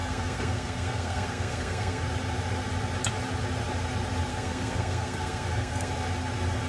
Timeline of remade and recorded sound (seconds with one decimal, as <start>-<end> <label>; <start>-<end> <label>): 0.0-2.0 remade; 2.0-4.3 recorded; 4.3-5.9 remade; 5.9-6.7 recorded